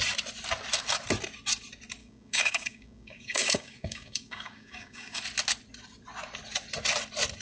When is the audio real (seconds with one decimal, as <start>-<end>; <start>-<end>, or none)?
0.0-2.0; 5.2-7.4